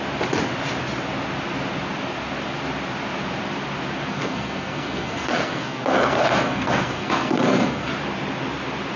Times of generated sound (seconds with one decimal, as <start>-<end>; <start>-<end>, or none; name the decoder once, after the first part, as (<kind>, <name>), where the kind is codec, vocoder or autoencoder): 4.1-7.9 (codec, SNAC)

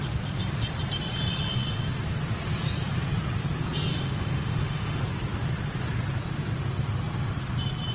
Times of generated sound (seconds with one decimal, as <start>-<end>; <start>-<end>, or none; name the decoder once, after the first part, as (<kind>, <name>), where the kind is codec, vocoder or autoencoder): 3.9-5.0 (autoencoder, DAC-VAE)

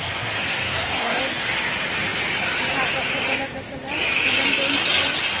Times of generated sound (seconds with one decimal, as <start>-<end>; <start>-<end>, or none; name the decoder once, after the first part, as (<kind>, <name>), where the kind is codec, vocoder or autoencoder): 0.4-1.2 (codec, SNAC)

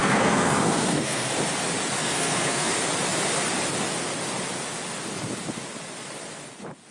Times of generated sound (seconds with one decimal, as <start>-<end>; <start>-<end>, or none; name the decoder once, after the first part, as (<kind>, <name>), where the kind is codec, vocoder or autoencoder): 0.0-1.3 (codec, SNAC); 2.0-2.7

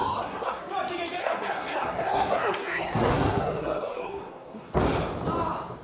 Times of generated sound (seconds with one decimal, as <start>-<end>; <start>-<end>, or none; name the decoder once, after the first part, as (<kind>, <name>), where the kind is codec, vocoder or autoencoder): 0.0-0.6 (codec, SNAC); 1.2-4.7

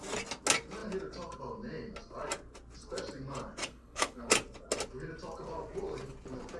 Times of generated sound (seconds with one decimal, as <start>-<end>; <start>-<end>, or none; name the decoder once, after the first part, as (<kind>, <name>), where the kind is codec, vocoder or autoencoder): 3.6-4.3 (codec, HILCodec)

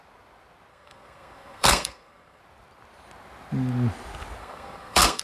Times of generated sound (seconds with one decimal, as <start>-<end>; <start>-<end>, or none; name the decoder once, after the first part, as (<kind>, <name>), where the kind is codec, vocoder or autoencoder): 0.7-2.4 (codec, SNAC); 4.4-5.2

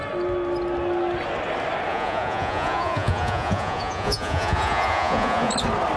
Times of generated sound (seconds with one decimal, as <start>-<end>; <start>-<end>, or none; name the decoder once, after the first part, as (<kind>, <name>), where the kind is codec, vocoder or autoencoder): 1.9-5.5 (vocoder, Vocos)